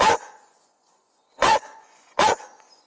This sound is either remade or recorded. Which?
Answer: remade